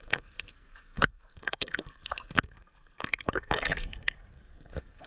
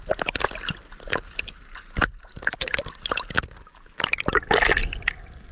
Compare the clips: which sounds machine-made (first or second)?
first